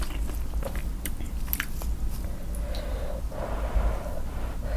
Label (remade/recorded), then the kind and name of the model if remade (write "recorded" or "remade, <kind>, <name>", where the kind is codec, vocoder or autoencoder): recorded